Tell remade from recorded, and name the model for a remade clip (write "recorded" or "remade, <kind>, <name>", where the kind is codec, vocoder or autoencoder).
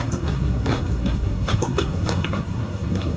remade, codec, SNAC